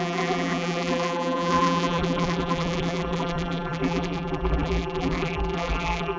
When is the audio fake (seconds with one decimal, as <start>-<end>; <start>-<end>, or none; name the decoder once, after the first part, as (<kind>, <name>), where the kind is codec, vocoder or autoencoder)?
0.0-6.2 (vocoder, BigVGAN v2)

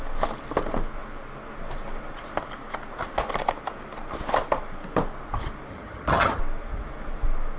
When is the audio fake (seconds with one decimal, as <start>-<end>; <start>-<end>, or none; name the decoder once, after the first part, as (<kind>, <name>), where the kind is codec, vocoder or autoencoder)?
5.7-6.4 (vocoder, HiFi-GAN)

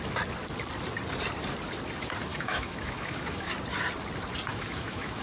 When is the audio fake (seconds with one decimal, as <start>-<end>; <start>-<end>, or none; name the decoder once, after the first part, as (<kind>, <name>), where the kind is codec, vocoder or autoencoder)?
2.3-3.5 (autoencoder, DAC-VAE); 4.5-5.2

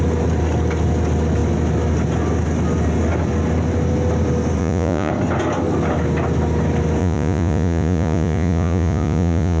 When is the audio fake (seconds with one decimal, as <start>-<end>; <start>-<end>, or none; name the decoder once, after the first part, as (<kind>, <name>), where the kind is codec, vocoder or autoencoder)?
4.6-5.1 (vocoder, Vocos); 7.0-9.6

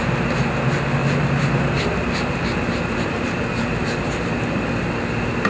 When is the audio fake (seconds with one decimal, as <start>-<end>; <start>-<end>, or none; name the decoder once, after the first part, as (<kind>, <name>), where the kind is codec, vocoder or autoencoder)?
1.0-4.3 (vocoder, BigVGAN v2)

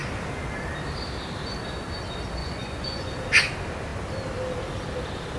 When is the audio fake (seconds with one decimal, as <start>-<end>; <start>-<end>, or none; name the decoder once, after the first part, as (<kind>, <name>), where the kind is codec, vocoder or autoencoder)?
2.4-3.1 (vocoder, Vocos)

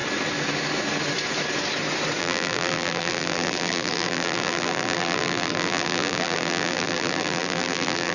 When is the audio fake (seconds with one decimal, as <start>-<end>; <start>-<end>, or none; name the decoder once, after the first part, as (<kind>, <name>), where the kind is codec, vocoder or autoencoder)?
2.2-8.1 (vocoder, BigVGAN v2)

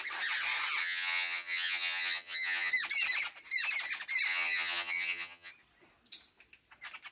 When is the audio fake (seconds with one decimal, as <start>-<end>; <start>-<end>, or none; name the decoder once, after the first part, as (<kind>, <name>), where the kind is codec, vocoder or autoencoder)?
0.8-2.7 (vocoder, HiFi-GAN); 4.3-5.5